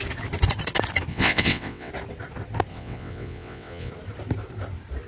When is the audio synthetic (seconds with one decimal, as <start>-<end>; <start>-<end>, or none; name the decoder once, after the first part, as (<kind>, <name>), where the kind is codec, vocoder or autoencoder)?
1.1-1.9 (vocoder, WaveNeXt); 2.7-3.9